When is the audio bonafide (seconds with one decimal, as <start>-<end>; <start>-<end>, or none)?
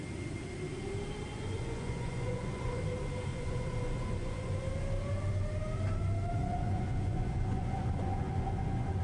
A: 0.0-1.3; 2.8-3.3; 4.5-6.4